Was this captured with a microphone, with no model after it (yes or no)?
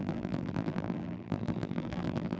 no